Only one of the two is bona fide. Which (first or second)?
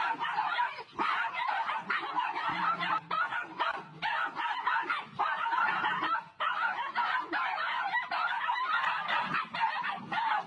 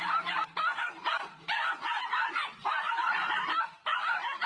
first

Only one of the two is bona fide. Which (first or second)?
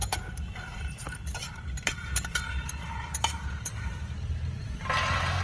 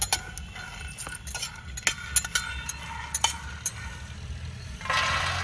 second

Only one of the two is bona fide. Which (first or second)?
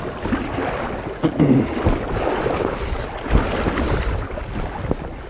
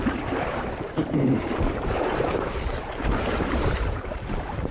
first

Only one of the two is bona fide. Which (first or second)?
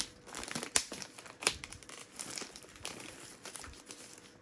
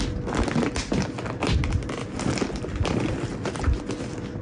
second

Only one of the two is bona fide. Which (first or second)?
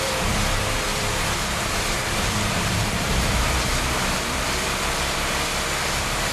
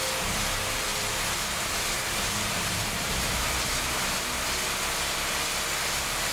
second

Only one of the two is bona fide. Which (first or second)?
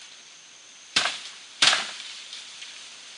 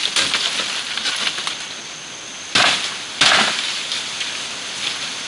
second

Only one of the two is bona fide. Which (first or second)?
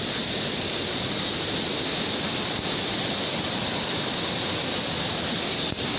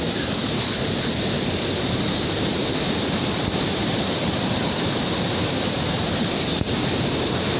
first